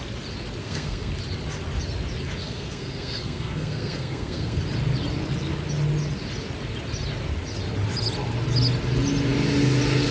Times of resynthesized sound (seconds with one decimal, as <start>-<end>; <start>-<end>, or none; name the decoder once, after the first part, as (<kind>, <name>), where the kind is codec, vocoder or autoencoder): 0.6-1.1 (codec, SNAC); 2.4-4.6